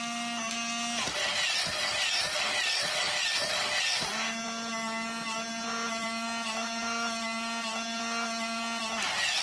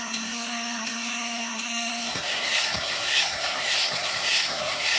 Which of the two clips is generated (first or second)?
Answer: second